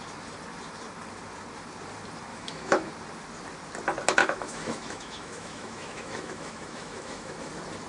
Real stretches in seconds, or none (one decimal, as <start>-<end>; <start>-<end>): 0.0-2.3; 2.9-4.2; 7.5-7.9